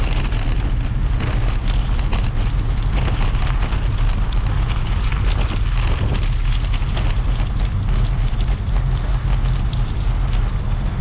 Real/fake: real